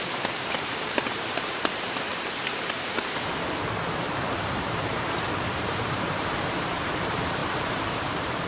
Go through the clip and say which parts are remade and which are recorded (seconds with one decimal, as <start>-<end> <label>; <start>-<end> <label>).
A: 0.0-2.1 remade; 2.1-4.3 recorded; 4.3-8.5 remade